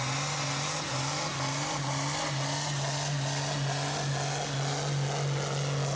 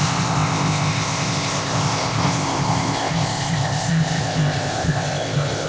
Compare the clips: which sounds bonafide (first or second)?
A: first